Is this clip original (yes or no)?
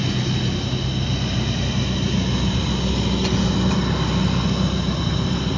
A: yes